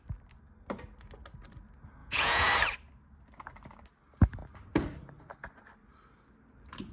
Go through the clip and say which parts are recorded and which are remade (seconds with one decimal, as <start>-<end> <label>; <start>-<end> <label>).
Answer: 0.0-2.0 recorded; 2.0-2.5 remade; 2.5-6.9 recorded